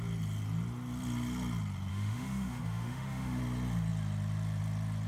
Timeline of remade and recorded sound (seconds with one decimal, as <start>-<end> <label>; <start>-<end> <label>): 0.0-1.9 recorded; 1.9-3.4 remade; 3.4-5.1 recorded